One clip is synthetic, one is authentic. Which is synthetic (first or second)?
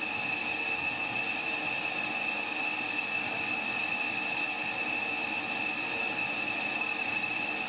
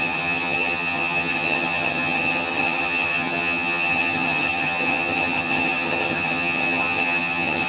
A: second